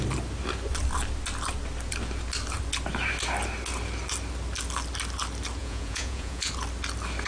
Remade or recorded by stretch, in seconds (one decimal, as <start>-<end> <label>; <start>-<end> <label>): 0.0-5.6 recorded; 5.6-6.5 remade; 6.5-7.3 recorded